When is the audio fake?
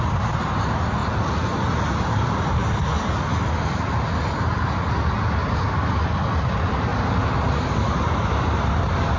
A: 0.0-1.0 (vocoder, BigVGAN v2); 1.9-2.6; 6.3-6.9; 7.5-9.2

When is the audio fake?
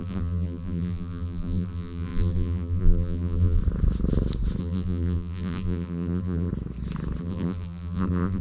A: 0.0-3.6 (vocoder, BigVGAN v2); 4.6-6.5; 7.2-8.4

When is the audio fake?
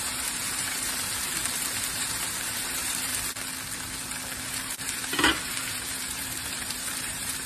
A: 0.0-3.1 (vocoder, BigVGAN v2); 4.4-7.5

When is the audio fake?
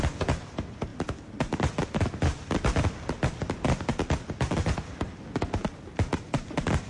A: none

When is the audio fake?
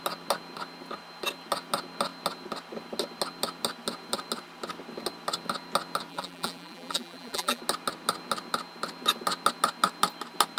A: 6.1-7.6 (vocoder, BigVGAN v2)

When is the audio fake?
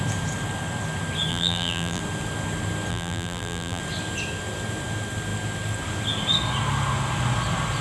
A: 1.3-2.0 (vocoder, BigVGAN v2); 2.9-3.8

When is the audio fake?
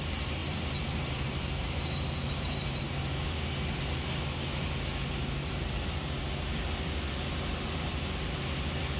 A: 0.4-2.8 (vocoder, BigVGAN v2); 5.4-6.2; 7.9-8.4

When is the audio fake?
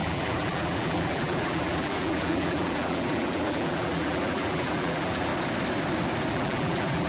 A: 0.0-5.3 (vocoder, BigVGAN v2); 6.3-7.1